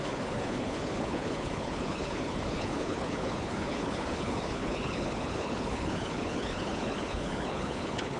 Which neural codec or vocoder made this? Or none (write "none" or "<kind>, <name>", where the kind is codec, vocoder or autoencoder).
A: codec, HILCodec